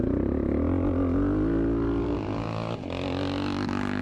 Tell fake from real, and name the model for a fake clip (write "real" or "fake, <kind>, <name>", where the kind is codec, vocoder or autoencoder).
real